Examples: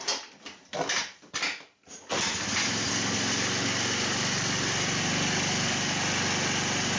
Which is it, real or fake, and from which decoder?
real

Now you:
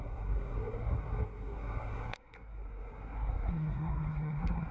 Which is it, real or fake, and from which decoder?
fake, codec, SNAC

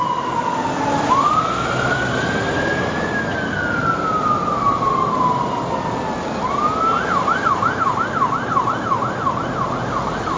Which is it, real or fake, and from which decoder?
real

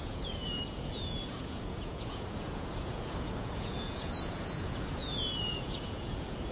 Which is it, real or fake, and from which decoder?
fake, vocoder, Vocos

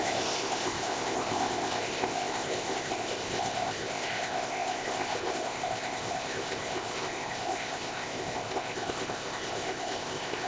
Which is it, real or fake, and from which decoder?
fake, codec, ZipCodec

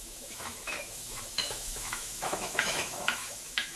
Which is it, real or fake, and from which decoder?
fake, autoencoder, DAC-VAE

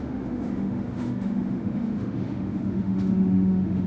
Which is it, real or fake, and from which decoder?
fake, autoencoder, DAC-VAE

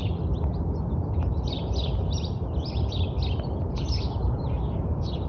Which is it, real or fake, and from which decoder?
real